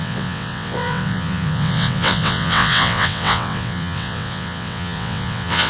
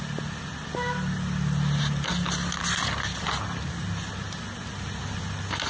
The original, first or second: second